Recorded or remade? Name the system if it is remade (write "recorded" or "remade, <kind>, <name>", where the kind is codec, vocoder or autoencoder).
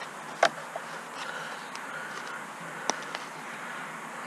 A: recorded